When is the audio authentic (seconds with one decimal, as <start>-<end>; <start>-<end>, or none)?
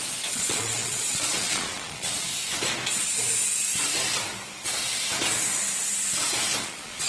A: 2.3-6.6